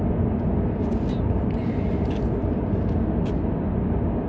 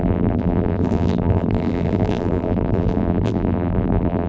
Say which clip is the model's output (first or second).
second